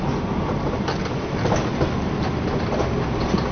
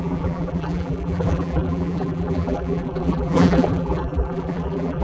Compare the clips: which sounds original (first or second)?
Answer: first